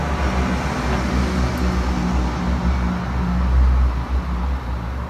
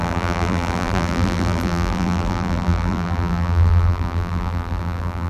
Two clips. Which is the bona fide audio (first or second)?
first